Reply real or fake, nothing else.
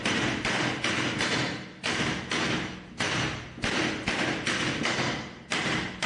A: real